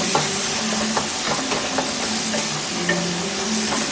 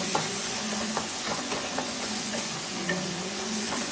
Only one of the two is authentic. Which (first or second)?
first